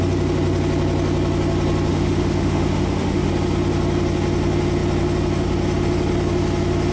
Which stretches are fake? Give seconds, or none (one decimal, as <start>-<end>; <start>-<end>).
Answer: 1.9-3.3